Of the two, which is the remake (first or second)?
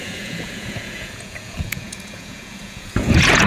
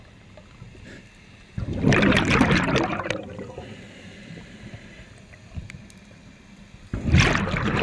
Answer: first